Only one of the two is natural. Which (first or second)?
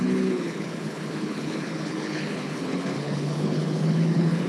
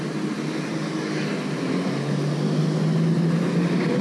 second